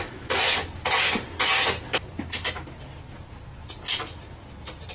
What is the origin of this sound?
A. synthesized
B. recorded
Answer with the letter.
B